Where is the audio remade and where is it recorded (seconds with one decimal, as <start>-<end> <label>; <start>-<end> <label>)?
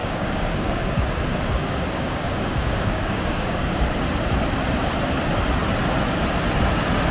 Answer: 0.0-1.0 remade; 1.0-1.6 recorded; 1.6-3.8 remade; 3.8-7.1 recorded